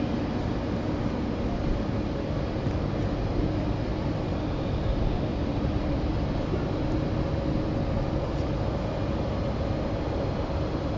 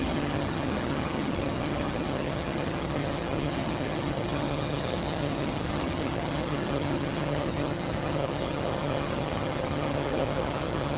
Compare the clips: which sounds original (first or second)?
first